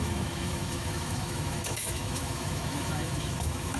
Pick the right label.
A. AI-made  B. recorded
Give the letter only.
A